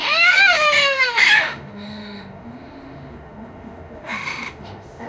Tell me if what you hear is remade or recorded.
remade